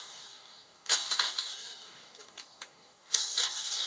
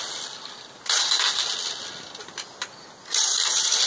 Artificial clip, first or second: first